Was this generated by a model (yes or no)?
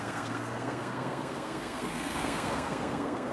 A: yes